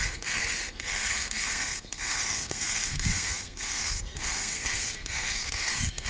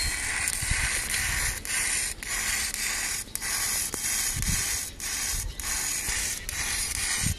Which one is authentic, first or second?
second